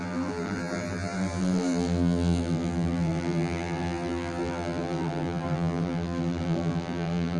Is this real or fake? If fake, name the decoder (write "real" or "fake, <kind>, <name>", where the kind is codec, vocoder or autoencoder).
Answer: fake, vocoder, BigVGAN v2